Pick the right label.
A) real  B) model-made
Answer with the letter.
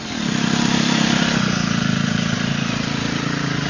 B